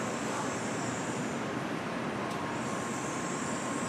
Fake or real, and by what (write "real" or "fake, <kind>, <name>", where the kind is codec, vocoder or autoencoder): fake, vocoder, BigVGAN v2